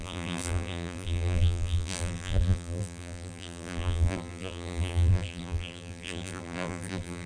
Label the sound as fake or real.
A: fake